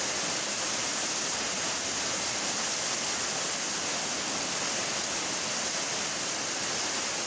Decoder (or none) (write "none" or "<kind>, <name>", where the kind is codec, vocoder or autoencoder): none